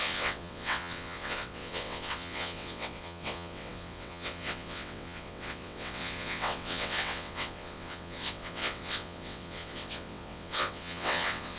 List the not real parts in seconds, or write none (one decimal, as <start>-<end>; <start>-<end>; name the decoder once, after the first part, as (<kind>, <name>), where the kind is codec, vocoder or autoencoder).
0.0-11.6 (vocoder, WaveNeXt)